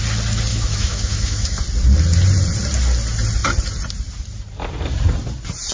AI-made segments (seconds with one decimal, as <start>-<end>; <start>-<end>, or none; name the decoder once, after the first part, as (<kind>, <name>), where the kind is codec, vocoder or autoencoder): 0.5-1.6 (autoencoder, DAC-VAE)